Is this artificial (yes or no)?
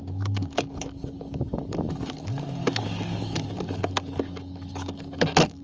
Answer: yes